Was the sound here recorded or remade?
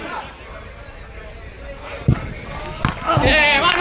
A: recorded